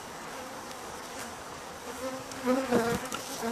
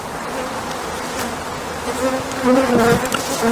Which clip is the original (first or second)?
second